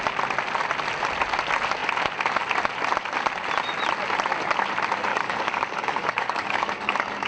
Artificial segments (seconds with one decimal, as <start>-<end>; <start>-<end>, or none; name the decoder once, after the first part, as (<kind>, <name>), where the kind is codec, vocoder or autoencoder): 5.1-7.3 (codec, DAC)